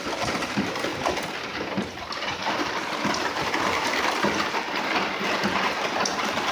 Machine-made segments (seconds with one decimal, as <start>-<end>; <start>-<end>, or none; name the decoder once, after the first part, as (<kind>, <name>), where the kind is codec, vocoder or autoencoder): 0.0-0.9 (vocoder, BigVGAN v2); 1.8-2.4; 3.1-6.5